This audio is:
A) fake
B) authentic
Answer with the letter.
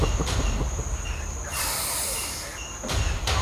B